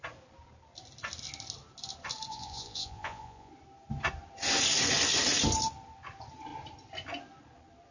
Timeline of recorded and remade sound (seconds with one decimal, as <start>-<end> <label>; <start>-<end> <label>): 0.0-2.3 recorded; 2.3-3.5 remade; 3.5-7.9 recorded